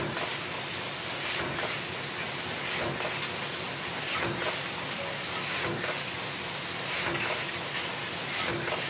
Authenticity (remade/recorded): recorded